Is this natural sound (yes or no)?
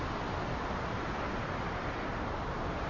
yes